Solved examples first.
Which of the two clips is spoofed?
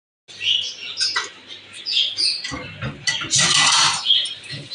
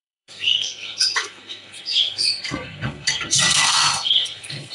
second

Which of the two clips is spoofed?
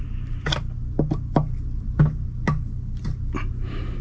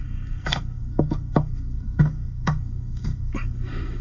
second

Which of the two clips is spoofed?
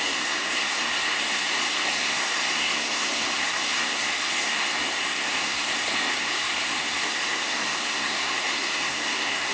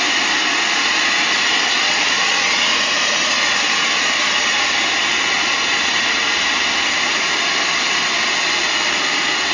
first